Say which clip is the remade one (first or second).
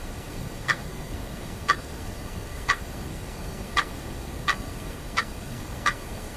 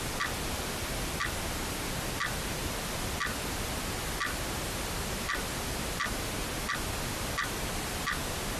first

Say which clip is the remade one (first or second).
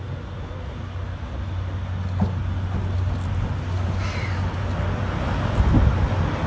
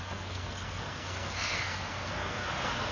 second